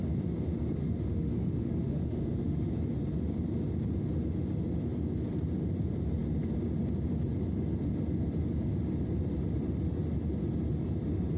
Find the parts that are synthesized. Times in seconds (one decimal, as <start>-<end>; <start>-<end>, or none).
0.8-2.7